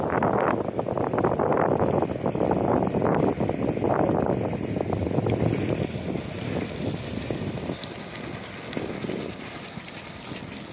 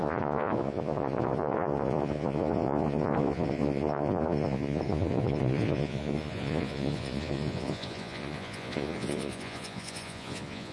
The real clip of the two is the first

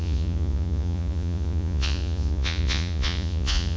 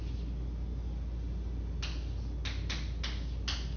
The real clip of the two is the second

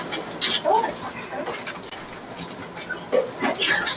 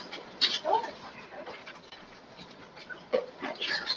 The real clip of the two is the first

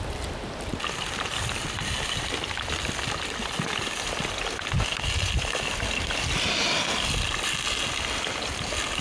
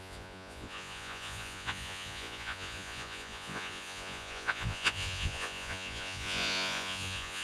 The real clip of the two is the first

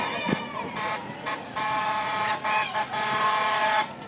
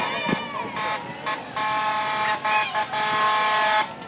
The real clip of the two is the second